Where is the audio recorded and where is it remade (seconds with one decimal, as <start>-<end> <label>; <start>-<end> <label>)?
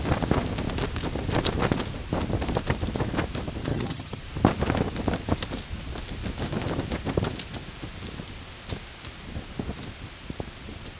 0.0-3.7 recorded; 3.7-4.2 remade; 4.2-11.0 recorded